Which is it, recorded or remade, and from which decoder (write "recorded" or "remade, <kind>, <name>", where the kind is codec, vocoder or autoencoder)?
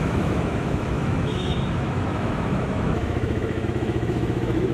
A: remade, autoencoder, DAC-VAE